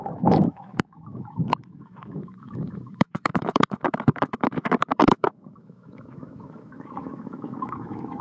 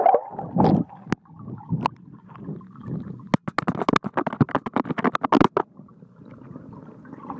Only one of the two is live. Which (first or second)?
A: second